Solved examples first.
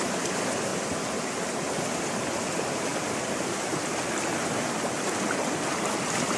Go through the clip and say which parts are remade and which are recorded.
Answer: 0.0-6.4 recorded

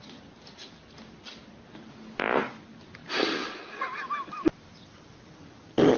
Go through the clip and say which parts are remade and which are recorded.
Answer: 0.0-3.0 recorded; 3.0-3.5 remade; 3.5-6.0 recorded